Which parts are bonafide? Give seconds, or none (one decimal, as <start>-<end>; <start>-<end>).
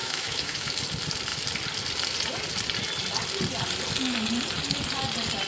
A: 0.7-5.5